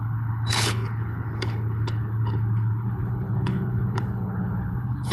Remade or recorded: remade